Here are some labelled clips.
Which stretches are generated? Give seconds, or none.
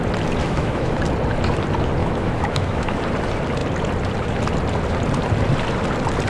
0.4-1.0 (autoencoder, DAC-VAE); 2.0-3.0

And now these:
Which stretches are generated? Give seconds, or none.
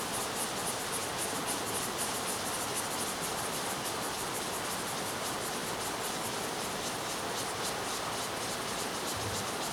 none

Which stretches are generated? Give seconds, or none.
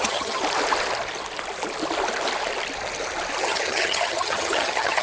0.0-0.4 (vocoder, HiFi-GAN); 3.4-5.0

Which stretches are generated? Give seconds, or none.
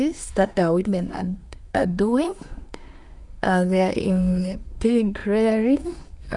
0.0-6.4 (codec, SNAC)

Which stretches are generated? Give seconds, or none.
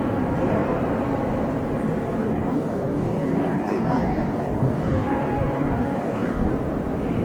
2.2-6.5 (codec, DAC)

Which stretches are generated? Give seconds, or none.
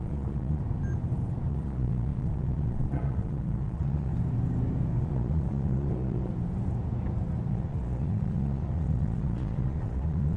0.0-0.6 (vocoder, Vocos); 1.5-4.1; 5.0-6.3; 7.5-10.4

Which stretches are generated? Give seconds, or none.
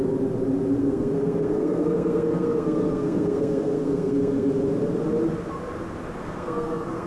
0.8-4.5 (codec, SNAC); 6.2-7.1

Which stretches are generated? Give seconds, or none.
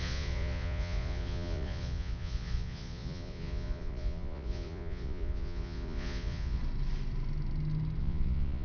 0.0-6.6 (vocoder, Vocos); 8.0-8.6